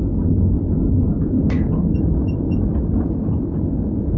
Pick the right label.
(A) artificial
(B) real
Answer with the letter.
B